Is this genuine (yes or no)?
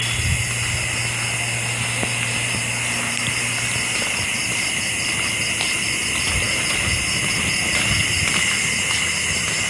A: yes